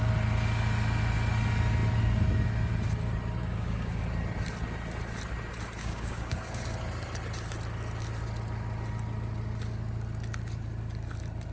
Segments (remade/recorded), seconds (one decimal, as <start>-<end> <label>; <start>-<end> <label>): 0.0-3.4 recorded; 3.4-4.0 remade; 4.0-5.8 recorded; 5.8-6.6 remade; 6.6-11.5 recorded

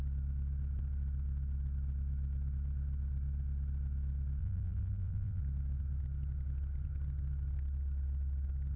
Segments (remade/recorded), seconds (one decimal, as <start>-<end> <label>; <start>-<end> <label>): 0.0-4.4 recorded; 4.4-5.4 remade; 5.4-8.8 recorded